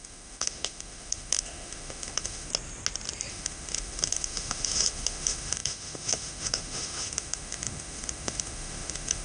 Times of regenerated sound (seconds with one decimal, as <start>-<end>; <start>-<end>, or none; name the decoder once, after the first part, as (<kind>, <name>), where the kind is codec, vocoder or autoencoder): 0.0-2.5 (autoencoder, DAC-VAE); 3.3-9.2